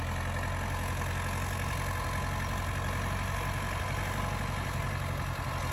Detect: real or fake real